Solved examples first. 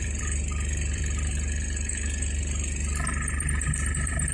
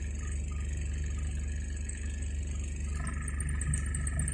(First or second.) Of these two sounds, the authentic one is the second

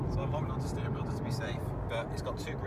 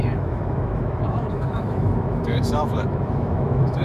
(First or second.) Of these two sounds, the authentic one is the first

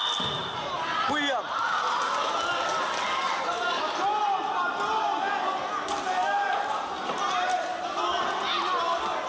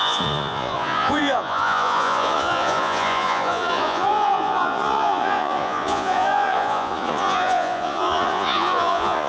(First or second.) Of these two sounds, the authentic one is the first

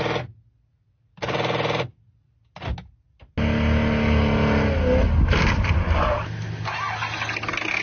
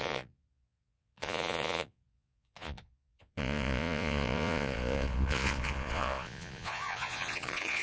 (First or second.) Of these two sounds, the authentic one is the first